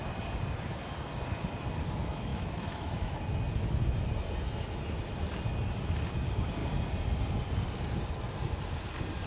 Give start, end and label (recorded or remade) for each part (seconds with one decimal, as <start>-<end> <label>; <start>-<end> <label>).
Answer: 0.0-2.3 recorded; 2.3-3.2 remade; 3.2-9.3 recorded